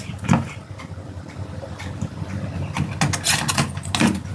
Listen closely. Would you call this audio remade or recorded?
recorded